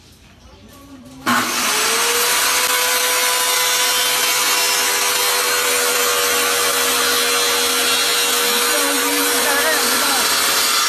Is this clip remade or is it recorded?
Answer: recorded